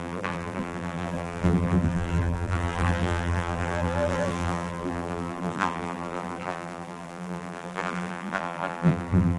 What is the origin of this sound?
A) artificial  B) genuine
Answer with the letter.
A